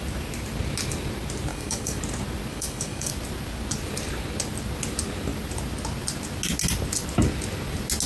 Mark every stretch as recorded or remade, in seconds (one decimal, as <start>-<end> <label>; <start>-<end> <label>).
0.0-1.5 recorded; 1.5-2.0 remade; 2.0-2.5 recorded; 2.5-3.1 remade; 3.1-8.1 recorded